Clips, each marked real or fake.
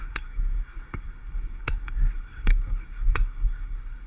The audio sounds fake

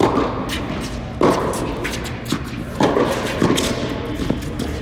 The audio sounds real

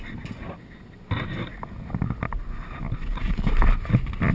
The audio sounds real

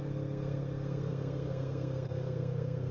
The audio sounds fake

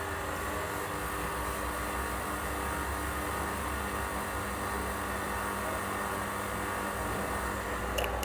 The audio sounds real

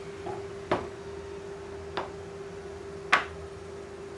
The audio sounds real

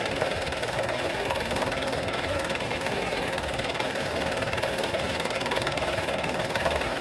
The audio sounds fake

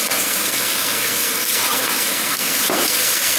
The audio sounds fake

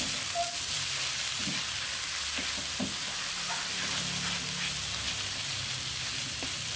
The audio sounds real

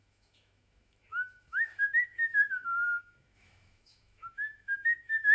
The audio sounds fake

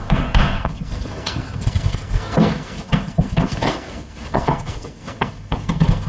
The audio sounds fake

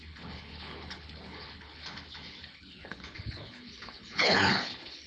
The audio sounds fake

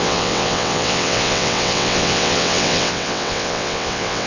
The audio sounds fake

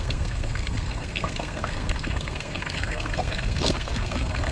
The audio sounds fake